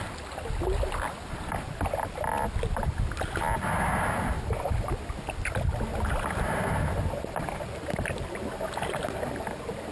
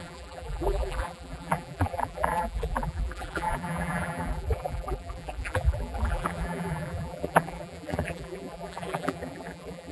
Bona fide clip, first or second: first